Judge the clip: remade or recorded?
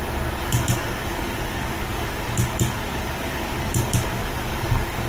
remade